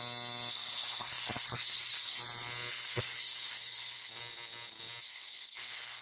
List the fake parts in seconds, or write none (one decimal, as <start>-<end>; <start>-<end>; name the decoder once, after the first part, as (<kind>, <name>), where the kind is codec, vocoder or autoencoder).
0.5-2.2 (codec, HILCodec); 2.7-4.1; 5.0-6.0